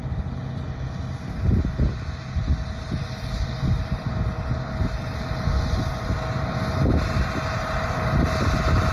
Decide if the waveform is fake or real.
real